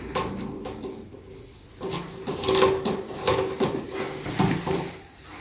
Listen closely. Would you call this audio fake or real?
real